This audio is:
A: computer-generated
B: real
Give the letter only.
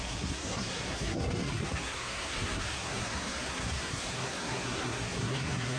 A